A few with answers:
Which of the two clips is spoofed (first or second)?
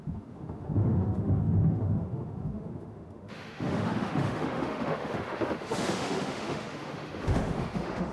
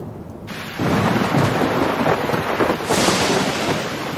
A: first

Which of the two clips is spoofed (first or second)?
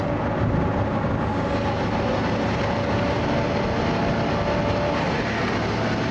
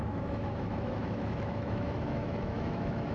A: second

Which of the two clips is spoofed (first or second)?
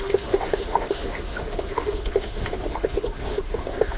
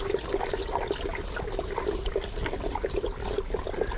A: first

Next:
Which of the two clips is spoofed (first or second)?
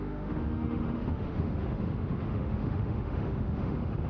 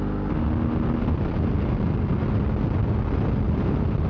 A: first